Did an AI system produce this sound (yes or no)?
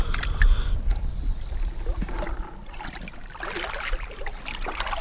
no